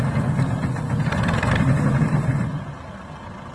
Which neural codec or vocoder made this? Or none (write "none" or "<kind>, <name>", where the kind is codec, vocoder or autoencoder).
none